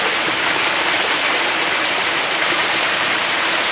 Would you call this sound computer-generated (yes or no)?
yes